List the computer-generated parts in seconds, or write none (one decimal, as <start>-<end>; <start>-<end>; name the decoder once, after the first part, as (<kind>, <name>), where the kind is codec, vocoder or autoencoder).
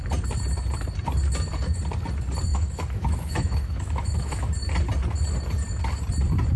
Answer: 2.5-4.5 (autoencoder, DAC-VAE)